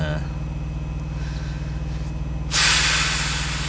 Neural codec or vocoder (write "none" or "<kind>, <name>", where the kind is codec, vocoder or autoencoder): none